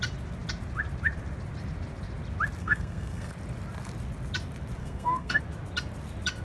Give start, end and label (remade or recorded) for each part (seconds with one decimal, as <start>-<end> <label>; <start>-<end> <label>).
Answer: 0.0-2.6 recorded; 2.6-3.3 remade; 3.3-4.8 recorded; 4.8-5.4 remade; 5.4-6.4 recorded